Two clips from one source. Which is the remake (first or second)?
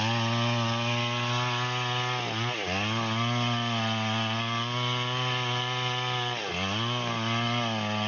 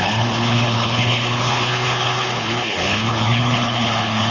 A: second